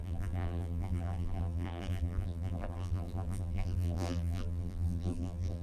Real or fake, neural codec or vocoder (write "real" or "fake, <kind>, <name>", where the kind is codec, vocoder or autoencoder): fake, vocoder, BigVGAN v2